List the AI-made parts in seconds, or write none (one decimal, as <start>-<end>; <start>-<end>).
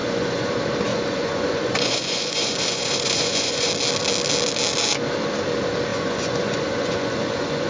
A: 0.0-0.5; 0.9-3.7; 5.9-7.7